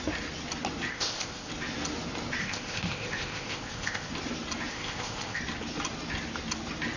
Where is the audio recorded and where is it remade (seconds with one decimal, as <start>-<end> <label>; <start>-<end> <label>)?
0.0-0.9 recorded; 0.9-1.5 remade; 1.5-2.4 recorded; 2.4-4.1 remade; 4.1-4.7 recorded; 4.7-5.4 remade; 5.4-7.0 recorded

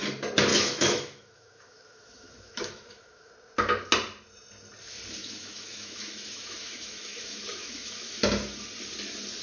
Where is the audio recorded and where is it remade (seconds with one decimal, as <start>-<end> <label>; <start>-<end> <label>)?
0.0-0.5 recorded; 0.5-3.3 remade; 3.3-5.2 recorded; 5.2-8.2 remade; 8.2-9.4 recorded

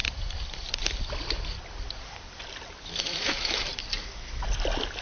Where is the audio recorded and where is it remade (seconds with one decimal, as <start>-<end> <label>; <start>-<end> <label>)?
0.0-3.0 recorded; 3.0-3.7 remade; 3.7-5.0 recorded

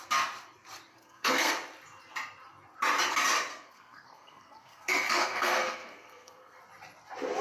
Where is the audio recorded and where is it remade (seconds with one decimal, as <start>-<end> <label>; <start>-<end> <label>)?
0.0-0.9 recorded; 0.9-1.5 remade; 1.5-3.5 recorded; 3.5-6.6 remade; 6.6-7.4 recorded

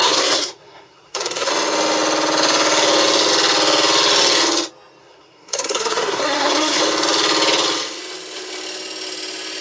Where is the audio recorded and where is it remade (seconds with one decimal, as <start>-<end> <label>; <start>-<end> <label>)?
0.0-1.5 remade; 1.5-5.0 recorded; 5.0-6.8 remade; 6.8-9.6 recorded

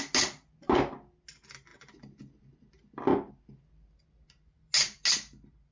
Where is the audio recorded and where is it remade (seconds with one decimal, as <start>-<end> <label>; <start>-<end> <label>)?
0.0-5.7 recorded

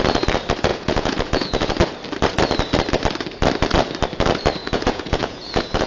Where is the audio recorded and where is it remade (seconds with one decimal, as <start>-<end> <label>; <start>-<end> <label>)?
0.0-0.7 recorded; 0.7-1.7 remade; 1.7-4.6 recorded; 4.6-5.9 remade

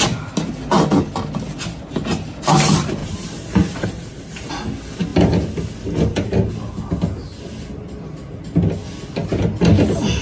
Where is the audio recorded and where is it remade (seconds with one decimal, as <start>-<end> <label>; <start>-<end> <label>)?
0.0-3.0 recorded; 3.0-4.5 remade; 4.5-10.2 recorded